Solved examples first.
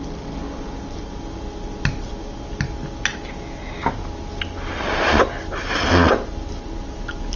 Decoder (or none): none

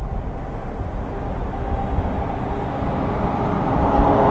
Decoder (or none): none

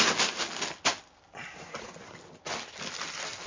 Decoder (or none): none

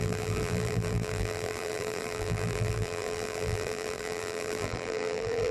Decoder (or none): vocoder, BigVGAN v2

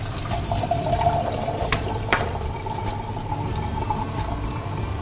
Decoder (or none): vocoder, BigVGAN v2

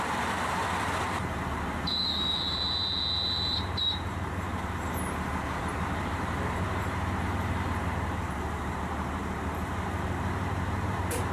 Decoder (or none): vocoder, BigVGAN v2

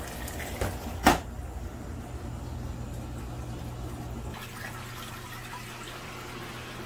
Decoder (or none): none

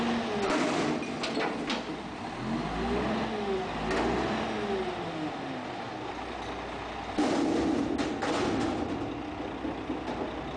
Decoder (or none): none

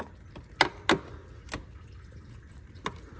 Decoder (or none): none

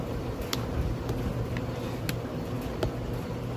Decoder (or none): none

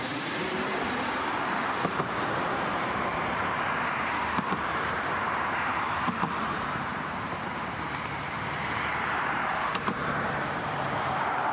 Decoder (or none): vocoder, BigVGAN v2